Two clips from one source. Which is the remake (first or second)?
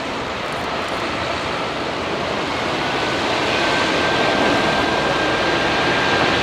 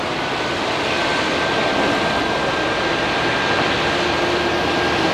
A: first